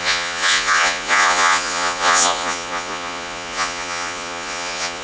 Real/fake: fake